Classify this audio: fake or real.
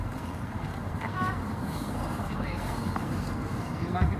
fake